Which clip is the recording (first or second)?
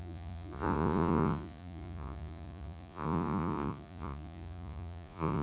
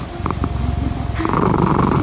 second